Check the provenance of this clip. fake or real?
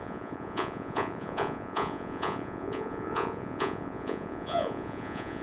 fake